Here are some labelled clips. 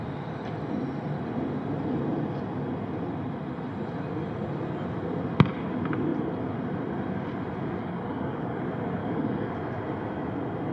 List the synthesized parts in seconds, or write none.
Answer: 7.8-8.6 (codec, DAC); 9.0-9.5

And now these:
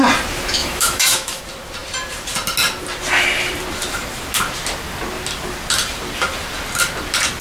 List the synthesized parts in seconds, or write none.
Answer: 0.6-1.4 (autoencoder, DAC-VAE)

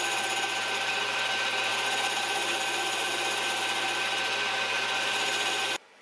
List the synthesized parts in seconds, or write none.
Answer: none

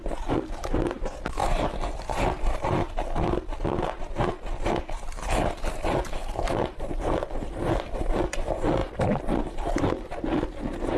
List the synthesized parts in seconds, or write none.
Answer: 6.2-7.5 (vocoder, BigVGAN v2)

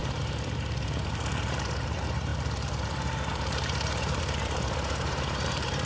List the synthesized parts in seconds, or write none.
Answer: 0.0-5.9 (vocoder, BigVGAN v2)

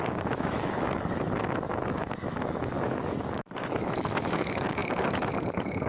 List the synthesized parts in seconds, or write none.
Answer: 0.0-5.9 (autoencoder, DAC-VAE)